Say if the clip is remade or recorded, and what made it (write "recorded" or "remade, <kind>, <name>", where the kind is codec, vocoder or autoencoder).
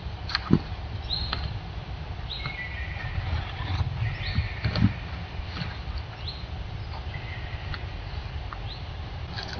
recorded